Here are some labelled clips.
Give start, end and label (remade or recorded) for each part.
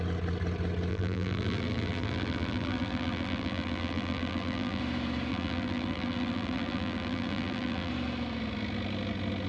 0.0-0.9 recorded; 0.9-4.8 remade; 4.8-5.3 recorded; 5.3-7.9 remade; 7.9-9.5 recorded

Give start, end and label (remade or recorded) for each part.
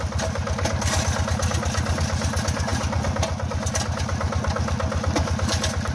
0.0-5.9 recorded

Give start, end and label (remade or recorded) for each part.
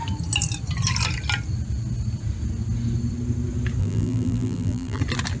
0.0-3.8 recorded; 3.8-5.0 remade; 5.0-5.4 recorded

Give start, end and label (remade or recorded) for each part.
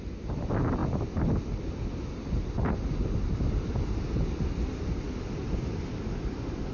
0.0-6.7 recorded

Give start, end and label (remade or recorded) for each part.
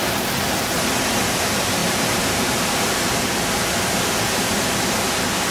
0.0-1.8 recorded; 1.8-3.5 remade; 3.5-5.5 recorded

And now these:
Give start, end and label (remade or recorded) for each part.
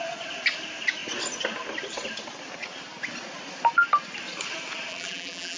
0.0-4.9 recorded; 4.9-5.6 remade